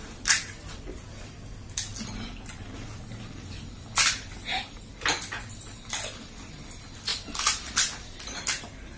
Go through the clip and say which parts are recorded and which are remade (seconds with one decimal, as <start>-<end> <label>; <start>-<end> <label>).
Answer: 0.0-1.9 remade; 1.9-5.9 recorded; 5.9-9.0 remade